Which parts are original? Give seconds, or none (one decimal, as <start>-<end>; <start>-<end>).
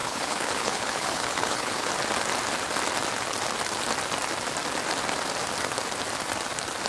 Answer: 1.9-6.9